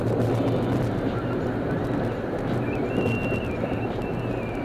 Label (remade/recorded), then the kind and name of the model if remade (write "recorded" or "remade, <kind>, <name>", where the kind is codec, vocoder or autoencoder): recorded